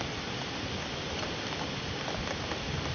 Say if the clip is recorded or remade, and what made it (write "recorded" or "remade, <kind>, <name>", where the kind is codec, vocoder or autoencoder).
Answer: recorded